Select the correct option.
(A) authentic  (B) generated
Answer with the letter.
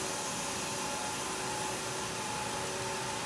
A